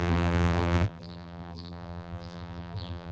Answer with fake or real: fake